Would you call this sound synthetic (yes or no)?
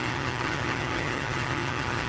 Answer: yes